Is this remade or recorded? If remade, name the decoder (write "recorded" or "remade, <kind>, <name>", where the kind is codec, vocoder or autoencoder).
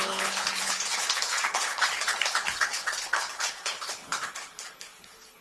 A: remade, codec, HILCodec